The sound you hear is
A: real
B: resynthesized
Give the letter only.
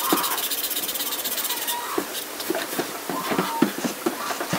B